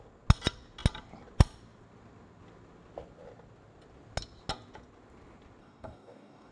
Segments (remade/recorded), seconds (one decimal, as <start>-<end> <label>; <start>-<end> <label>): 0.0-5.6 recorded; 5.6-6.5 remade